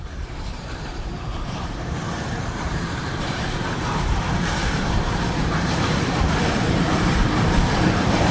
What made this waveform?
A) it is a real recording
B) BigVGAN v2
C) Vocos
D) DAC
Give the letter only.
B